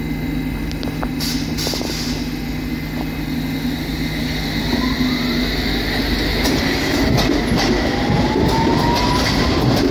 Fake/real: real